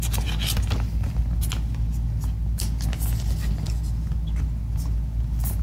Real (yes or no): yes